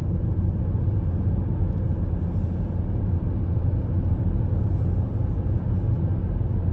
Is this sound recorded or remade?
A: recorded